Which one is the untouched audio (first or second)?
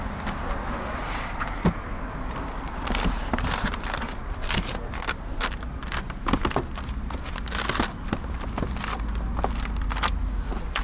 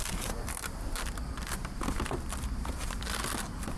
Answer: first